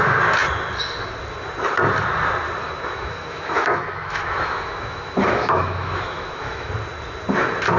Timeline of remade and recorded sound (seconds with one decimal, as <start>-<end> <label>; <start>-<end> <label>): 0.0-2.6 recorded; 2.6-6.7 remade; 6.7-7.8 recorded